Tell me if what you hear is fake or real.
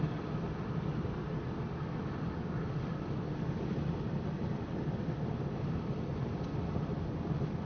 real